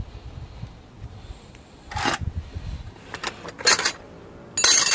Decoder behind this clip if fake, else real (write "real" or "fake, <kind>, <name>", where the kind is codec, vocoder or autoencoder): real